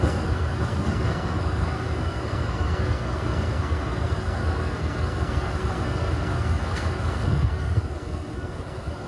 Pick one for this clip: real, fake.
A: fake